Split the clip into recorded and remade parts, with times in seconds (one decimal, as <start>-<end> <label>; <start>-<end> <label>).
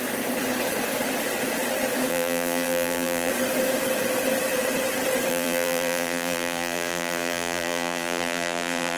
0.0-2.1 recorded; 2.1-3.3 remade; 3.3-5.3 recorded; 5.3-9.0 remade